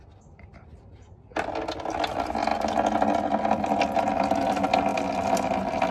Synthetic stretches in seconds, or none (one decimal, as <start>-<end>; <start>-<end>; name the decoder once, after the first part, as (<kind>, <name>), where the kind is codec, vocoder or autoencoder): none